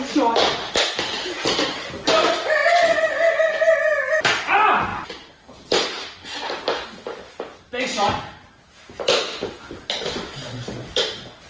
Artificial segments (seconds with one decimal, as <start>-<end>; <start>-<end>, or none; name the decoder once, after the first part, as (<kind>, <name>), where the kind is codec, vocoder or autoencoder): none